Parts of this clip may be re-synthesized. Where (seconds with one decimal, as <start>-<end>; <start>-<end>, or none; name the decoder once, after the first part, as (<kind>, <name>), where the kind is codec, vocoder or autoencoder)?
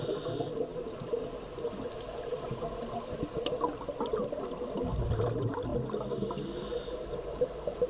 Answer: none